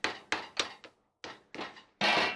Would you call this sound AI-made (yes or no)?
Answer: no